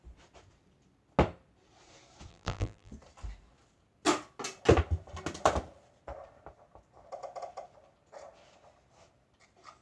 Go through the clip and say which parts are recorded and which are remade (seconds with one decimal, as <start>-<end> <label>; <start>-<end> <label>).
0.0-2.3 recorded; 2.3-2.9 remade; 2.9-9.8 recorded

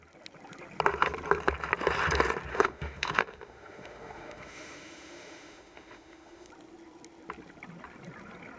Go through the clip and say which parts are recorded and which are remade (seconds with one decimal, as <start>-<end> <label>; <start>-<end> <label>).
0.0-2.5 recorded; 2.5-6.5 remade; 6.5-8.6 recorded